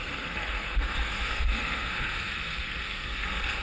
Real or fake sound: fake